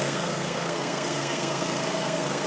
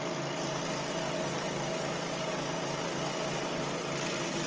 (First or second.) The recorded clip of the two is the second